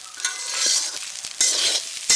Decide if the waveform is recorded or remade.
recorded